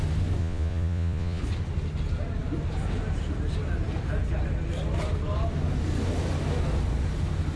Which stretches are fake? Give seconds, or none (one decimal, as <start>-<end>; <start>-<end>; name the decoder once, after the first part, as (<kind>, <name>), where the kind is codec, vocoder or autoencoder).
0.4-1.4 (vocoder, Vocos)